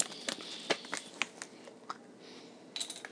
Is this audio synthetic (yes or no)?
no